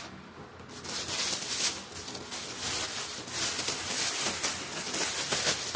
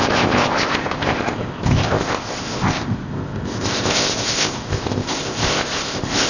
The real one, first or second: first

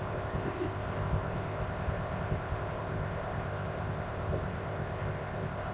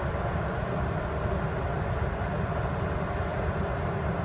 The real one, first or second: second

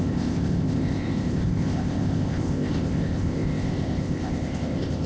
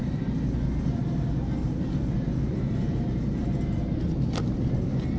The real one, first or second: second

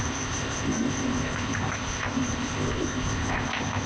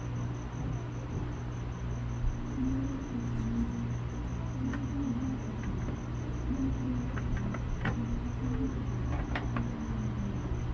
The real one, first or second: second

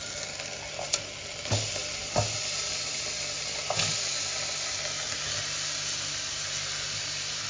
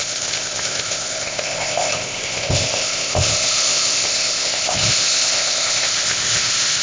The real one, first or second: first